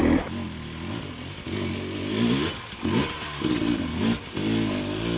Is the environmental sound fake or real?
real